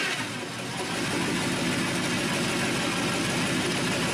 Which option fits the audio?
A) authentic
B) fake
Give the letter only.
A